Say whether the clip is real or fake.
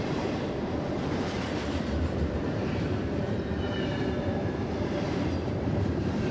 fake